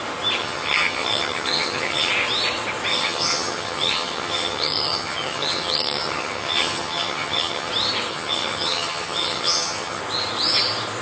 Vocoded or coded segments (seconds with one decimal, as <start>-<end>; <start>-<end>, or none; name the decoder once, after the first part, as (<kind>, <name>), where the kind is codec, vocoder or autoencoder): 0.4-2.1 (vocoder, HiFi-GAN); 2.9-7.7; 8.1-10.0